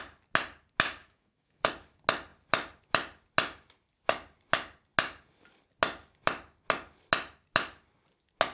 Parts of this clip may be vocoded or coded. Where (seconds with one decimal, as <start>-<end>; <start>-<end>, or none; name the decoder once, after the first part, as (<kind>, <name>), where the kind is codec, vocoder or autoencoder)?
1.0-1.7 (autoencoder, DAC-VAE)